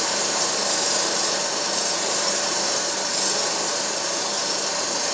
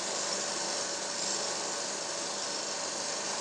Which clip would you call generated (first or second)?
first